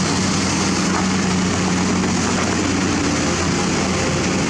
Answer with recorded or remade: recorded